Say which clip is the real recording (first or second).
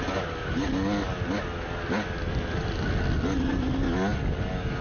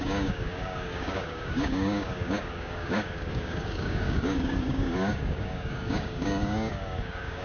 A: first